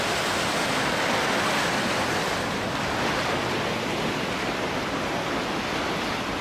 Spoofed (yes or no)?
no